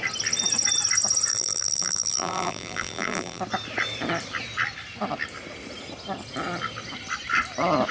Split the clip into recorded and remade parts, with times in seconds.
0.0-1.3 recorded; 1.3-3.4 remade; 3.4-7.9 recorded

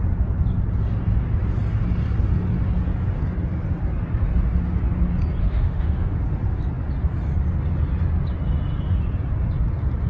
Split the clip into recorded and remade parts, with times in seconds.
0.0-5.4 recorded; 5.4-6.2 remade; 6.2-10.1 recorded

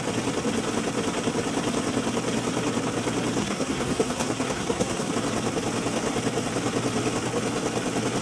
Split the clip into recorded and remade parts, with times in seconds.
0.0-3.4 recorded; 3.4-5.1 remade; 5.1-8.2 recorded